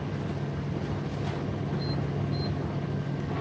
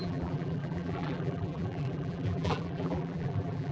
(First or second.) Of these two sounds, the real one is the first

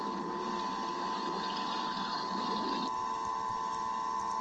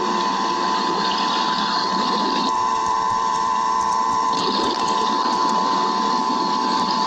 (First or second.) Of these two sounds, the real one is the first